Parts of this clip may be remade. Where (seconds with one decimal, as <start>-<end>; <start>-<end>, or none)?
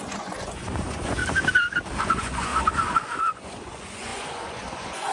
0.0-1.2; 2.0-2.5; 3.2-5.1